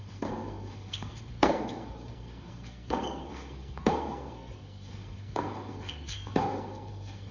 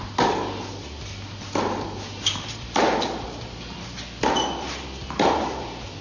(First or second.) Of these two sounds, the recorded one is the second